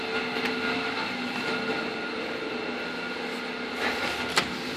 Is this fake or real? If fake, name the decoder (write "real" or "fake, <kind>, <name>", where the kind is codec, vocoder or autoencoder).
real